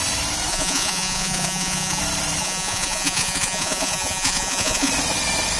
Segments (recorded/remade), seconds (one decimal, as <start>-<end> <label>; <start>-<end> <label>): 0.0-0.5 recorded; 0.5-2.0 remade; 2.0-2.4 recorded; 2.4-4.9 remade; 4.9-5.6 recorded